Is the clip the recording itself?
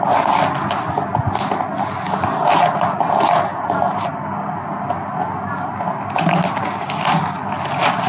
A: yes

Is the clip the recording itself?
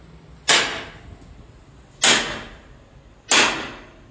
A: yes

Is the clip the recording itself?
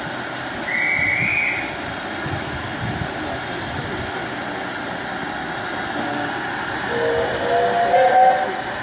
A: yes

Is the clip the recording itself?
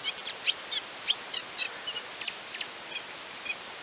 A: yes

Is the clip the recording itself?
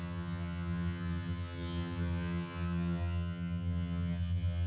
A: no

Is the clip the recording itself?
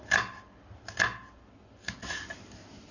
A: yes